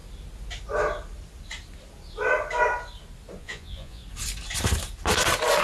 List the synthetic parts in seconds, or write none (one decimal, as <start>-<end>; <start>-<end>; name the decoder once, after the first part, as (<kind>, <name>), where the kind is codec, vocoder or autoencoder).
3.4-4.0 (vocoder, Vocos)